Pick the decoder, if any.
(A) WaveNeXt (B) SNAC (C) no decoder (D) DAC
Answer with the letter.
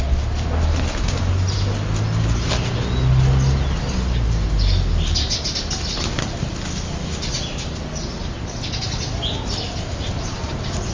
C